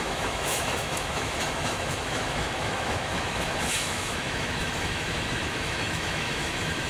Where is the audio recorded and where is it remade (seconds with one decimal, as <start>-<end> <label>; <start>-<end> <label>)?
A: 0.0-6.9 remade